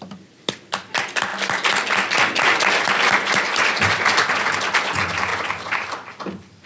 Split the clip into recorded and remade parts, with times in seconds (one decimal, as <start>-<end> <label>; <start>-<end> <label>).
0.0-6.7 recorded